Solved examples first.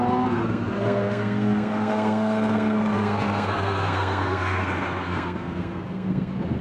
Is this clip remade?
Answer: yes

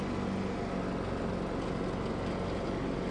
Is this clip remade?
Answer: no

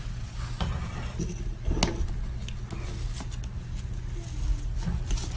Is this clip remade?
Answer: no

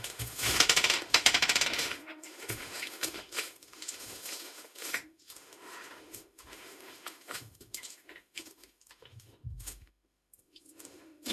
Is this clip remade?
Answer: yes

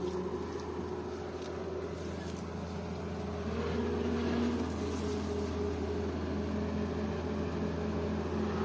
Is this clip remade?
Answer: no